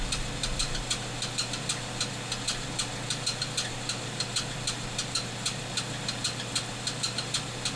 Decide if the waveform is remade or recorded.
recorded